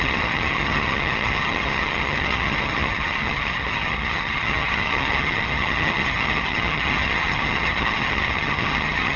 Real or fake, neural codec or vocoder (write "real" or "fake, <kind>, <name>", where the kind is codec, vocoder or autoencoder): fake, vocoder, HiFi-GAN